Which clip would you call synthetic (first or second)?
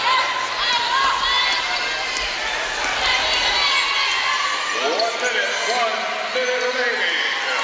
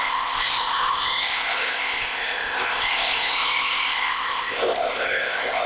second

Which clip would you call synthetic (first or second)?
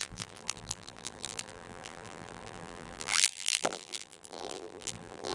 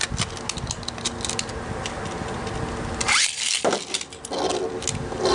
first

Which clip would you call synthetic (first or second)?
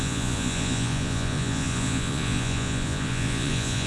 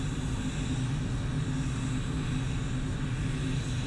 first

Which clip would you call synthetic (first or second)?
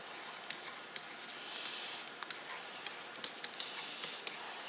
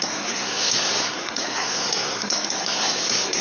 second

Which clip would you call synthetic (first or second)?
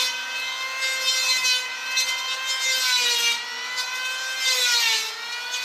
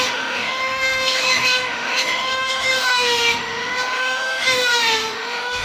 second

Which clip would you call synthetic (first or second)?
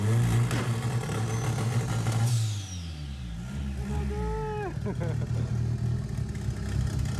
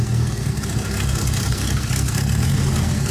second